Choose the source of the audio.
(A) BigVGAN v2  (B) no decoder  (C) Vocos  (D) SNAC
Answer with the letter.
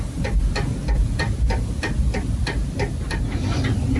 B